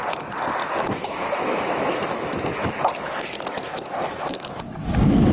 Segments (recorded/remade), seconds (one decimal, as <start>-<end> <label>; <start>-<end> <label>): 0.0-0.6 recorded; 0.6-2.8 remade; 2.8-3.7 recorded; 3.7-4.6 remade; 4.6-5.3 recorded